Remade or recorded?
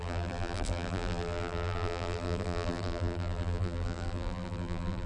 remade